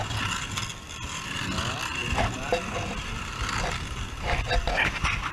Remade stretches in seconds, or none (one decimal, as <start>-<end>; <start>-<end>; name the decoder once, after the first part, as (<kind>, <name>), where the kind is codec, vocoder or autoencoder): 0.7-1.4 (vocoder, BigVGAN v2)